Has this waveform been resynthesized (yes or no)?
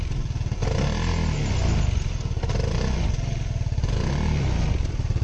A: no